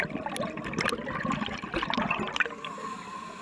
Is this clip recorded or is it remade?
recorded